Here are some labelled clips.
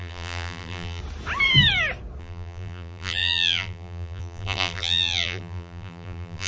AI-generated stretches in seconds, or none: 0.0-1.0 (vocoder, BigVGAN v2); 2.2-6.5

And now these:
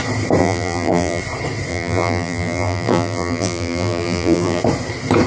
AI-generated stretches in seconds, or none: 0.4-1.2 (vocoder, BigVGAN v2); 1.7-4.6